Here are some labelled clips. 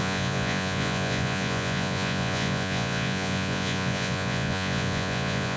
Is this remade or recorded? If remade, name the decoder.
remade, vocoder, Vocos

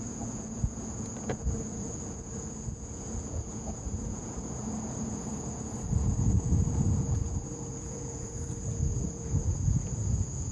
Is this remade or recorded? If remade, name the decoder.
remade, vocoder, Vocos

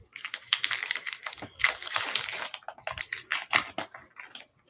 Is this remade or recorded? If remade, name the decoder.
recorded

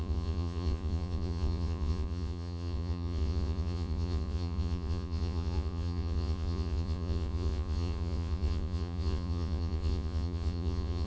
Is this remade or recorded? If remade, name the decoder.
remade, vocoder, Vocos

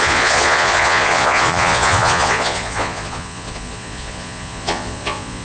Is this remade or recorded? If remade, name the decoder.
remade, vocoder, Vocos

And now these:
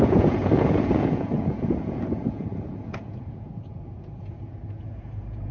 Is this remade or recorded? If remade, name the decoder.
remade, vocoder, Vocos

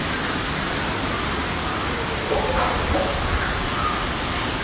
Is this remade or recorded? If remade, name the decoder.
recorded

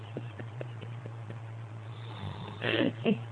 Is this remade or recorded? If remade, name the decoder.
remade, vocoder, Vocos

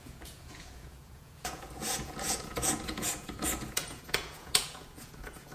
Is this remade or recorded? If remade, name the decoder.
remade, vocoder, Vocos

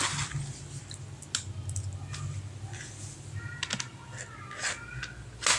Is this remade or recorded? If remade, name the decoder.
recorded